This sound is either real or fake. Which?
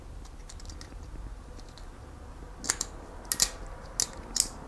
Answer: real